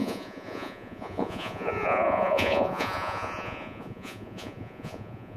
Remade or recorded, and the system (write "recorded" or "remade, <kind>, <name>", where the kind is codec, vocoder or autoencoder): remade, vocoder, Vocos